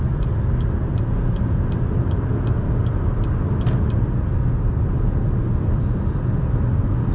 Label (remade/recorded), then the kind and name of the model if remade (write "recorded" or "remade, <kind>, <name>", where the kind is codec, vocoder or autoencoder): recorded